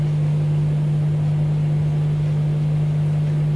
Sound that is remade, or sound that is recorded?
recorded